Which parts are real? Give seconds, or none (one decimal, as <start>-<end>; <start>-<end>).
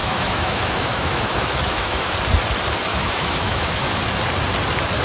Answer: 2.1-2.9; 4.0-5.0